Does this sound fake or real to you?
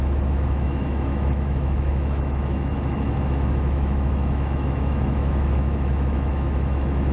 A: fake